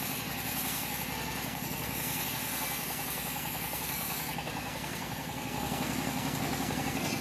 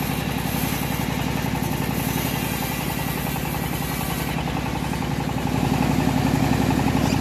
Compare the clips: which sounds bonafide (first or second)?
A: second